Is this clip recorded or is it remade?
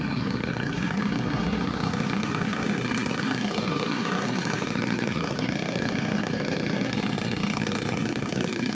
remade